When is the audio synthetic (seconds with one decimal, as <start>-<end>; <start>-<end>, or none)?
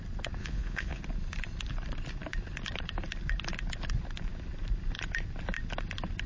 0.4-1.0